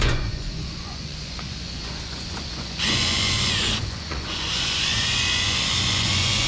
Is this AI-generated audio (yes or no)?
yes